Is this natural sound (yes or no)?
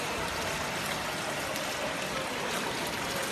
yes